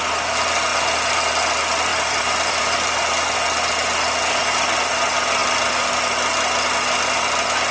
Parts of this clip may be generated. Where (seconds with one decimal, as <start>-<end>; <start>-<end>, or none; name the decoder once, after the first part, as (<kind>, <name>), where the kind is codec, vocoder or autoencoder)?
1.9-3.0 (vocoder, BigVGAN v2); 5.4-5.9

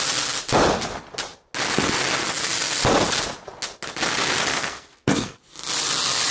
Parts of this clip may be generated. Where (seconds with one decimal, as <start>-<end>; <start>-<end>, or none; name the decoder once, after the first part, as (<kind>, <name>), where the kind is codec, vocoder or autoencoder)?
4.5-5.4 (codec, SNAC)

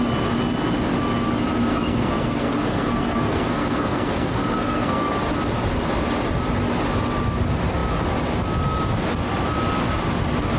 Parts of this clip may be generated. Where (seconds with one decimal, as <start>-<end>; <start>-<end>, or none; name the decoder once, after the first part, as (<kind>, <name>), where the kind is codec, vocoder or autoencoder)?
1.7-5.1 (codec, SNAC)

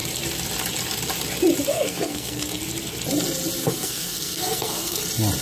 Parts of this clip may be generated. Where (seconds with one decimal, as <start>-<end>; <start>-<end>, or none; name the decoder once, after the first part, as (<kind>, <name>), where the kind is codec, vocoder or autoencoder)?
1.7-2.6 (codec, SNAC); 3.6-5.0

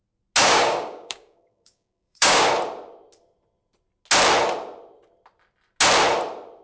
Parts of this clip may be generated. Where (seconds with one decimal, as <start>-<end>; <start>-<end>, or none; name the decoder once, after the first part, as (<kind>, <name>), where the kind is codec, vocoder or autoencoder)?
0.4-2.5 (codec, DAC)

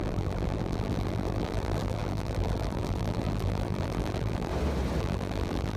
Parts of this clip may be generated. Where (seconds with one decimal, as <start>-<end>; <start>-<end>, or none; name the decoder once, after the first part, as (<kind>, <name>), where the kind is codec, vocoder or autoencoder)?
0.0-4.5 (vocoder, BigVGAN v2); 5.0-5.8

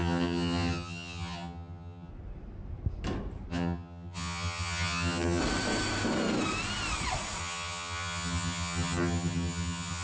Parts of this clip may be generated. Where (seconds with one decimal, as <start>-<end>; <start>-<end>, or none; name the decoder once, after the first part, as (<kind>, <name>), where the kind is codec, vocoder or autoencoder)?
0.0-2.1 (vocoder, HiFi-GAN); 3.5-5.4; 7.4-10.0

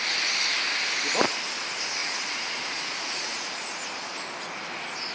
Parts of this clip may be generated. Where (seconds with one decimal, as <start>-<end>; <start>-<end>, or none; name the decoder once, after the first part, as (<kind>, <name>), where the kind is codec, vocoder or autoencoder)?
2.0-3.6 (vocoder, Vocos)